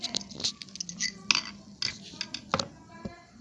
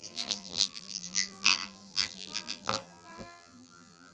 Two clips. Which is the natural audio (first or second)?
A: first